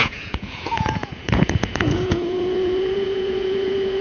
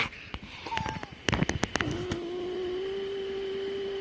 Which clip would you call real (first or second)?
second